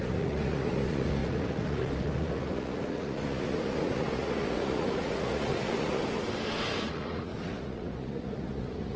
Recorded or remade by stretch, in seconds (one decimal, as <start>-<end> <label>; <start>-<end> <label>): 0.0-6.0 remade; 6.0-6.8 recorded; 6.8-9.0 remade